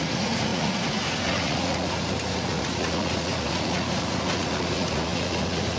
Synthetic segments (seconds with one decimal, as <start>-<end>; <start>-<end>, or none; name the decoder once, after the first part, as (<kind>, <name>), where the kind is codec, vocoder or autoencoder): 0.0-5.8 (vocoder, Vocos)